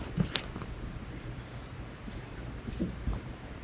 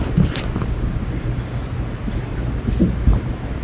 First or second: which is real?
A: second